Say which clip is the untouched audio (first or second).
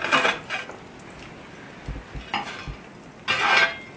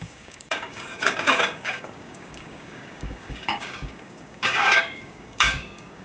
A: first